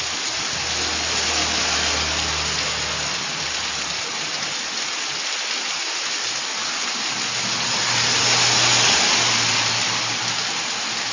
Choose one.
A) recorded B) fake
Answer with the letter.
A